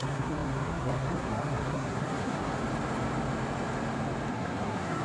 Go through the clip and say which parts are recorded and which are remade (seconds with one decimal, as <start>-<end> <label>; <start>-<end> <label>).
0.0-2.5 remade; 2.5-4.3 recorded; 4.3-5.0 remade